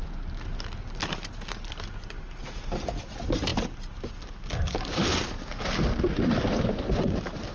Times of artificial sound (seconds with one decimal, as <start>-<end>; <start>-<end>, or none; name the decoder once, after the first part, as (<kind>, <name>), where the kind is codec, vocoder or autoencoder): none